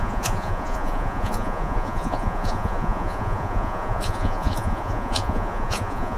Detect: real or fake fake